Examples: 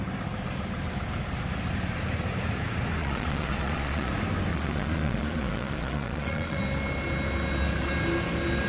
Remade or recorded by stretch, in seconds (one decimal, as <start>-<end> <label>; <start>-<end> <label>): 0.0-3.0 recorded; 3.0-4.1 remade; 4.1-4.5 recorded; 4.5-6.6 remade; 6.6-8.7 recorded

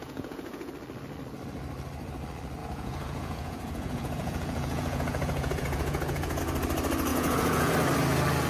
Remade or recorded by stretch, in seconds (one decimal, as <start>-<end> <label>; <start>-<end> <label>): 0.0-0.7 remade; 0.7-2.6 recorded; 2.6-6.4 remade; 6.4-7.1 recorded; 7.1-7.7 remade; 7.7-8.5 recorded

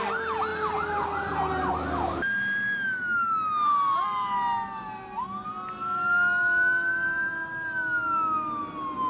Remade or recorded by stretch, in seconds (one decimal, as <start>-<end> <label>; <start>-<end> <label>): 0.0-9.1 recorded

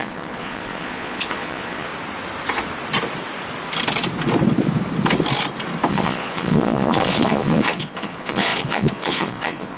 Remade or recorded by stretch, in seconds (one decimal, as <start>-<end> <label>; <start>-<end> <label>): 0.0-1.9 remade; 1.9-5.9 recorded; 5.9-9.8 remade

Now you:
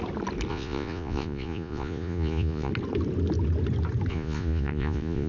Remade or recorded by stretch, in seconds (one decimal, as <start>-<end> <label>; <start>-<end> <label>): 0.0-0.5 recorded; 0.5-2.7 remade; 2.7-4.1 recorded; 4.1-5.3 remade